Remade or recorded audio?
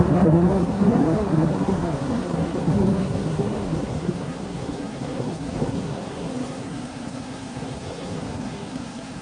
remade